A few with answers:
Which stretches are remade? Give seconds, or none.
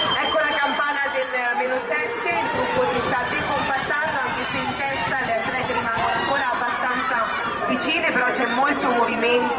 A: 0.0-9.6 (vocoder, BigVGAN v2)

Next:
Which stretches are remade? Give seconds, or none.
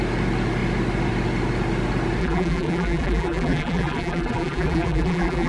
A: 2.2-5.5 (vocoder, BigVGAN v2)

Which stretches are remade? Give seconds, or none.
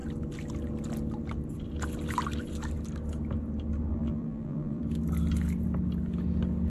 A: 3.9-4.8 (vocoder, BigVGAN v2)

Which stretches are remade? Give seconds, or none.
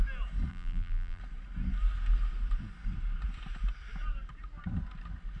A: 0.5-1.2 (vocoder, BigVGAN v2)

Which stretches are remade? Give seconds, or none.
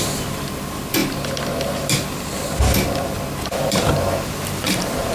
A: 0.0-5.1 (vocoder, BigVGAN v2)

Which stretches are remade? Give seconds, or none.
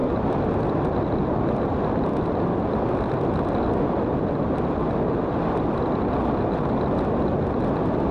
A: none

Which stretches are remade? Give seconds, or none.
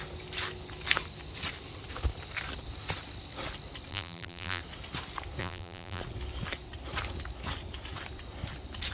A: 3.9-4.6 (vocoder, BigVGAN v2); 5.4-6.0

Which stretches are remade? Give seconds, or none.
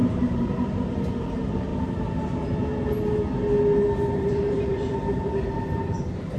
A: 0.0-1.7 (vocoder, BigVGAN v2); 4.1-6.4